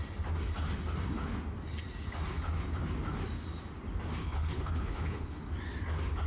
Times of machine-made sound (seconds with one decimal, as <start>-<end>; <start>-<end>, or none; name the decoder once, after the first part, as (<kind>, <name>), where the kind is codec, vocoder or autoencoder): 4.2-5.4 (codec, HILCodec)